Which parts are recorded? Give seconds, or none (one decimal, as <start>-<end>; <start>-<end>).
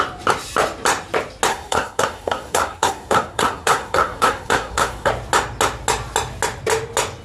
0.0-1.5; 5.1-7.2